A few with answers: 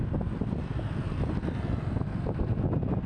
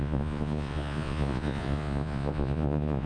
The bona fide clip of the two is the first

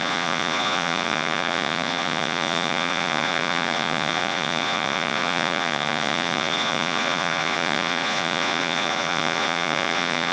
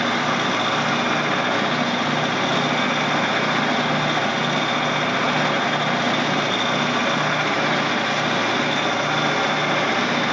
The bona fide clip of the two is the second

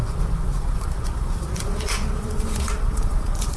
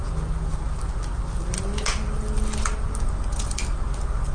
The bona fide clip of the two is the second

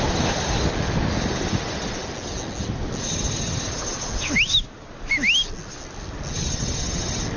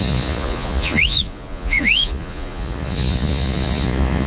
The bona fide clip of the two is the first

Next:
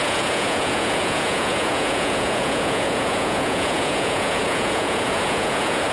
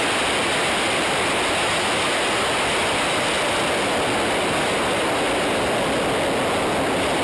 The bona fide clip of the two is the second